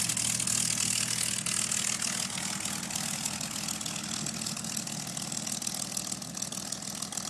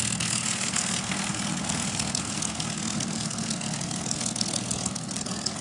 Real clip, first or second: first